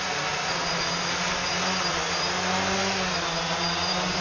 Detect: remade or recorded recorded